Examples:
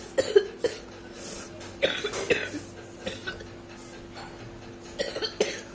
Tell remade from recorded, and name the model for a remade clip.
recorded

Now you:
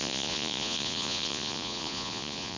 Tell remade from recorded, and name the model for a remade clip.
remade, vocoder, Vocos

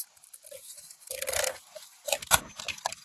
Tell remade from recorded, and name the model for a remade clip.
recorded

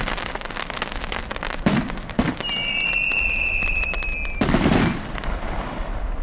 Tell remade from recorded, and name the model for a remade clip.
recorded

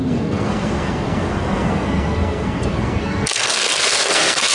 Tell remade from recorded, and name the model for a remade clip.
remade, codec, SNAC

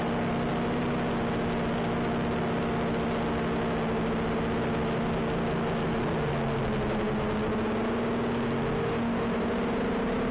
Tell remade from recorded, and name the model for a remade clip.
recorded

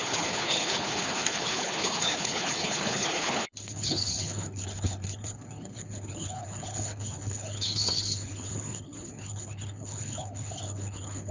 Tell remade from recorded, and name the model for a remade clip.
remade, codec, HILCodec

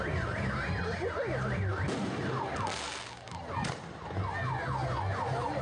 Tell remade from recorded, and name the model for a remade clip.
recorded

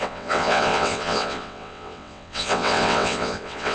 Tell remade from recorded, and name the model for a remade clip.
remade, vocoder, WaveNeXt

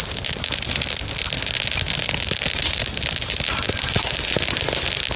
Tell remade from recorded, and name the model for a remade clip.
recorded